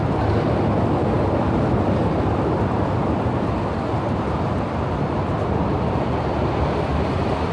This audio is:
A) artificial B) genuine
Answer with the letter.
B